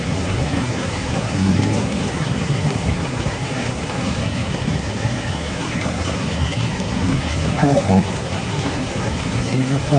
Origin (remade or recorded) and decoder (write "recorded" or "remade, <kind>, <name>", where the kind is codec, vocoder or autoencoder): remade, codec, SNAC